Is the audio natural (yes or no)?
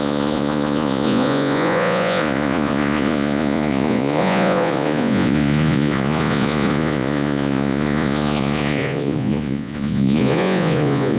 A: no